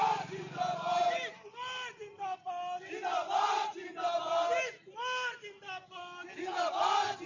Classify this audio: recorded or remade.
recorded